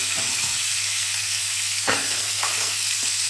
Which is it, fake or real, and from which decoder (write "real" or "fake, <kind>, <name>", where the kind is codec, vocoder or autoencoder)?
fake, codec, SNAC